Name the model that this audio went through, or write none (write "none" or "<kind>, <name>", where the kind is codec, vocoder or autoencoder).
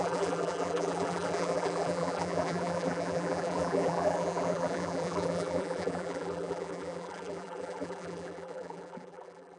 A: vocoder, BigVGAN v2